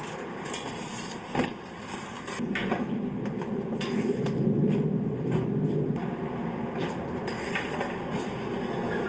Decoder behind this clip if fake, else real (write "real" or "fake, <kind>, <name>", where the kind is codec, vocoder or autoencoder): real